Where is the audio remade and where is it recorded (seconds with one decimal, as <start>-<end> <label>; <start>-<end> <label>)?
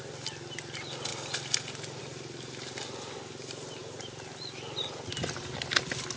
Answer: 0.0-6.2 recorded